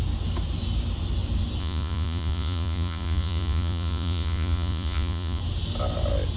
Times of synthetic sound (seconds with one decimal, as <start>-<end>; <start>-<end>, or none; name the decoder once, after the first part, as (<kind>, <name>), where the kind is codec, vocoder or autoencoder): 1.6-5.4 (vocoder, Vocos)